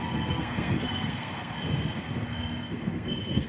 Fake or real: fake